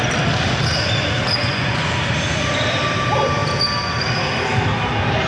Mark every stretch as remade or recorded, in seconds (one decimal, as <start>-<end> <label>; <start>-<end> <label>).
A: 0.0-1.4 recorded; 1.4-1.9 remade; 1.9-5.3 recorded